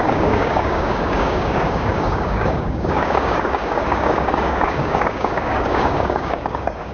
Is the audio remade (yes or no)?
yes